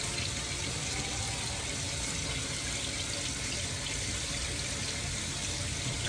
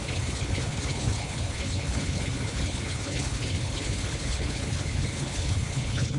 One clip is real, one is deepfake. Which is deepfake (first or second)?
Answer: second